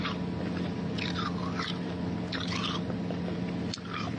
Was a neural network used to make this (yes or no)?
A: no